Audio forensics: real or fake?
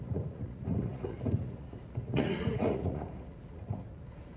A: fake